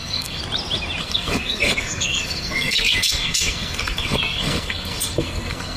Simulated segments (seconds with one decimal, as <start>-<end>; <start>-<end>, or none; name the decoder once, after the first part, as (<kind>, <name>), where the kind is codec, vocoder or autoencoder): 0.0-0.4 (codec, SNAC); 1.0-5.8